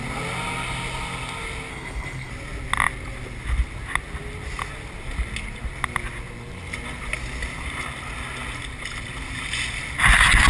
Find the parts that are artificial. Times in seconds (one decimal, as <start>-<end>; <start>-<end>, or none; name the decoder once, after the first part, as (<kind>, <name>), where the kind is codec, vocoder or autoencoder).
1.7-2.3 (codec, HILCodec)